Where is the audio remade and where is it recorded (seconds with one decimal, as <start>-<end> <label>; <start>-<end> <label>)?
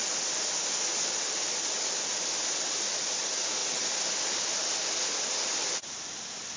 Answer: 0.0-6.6 recorded